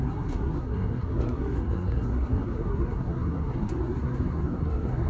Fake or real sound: fake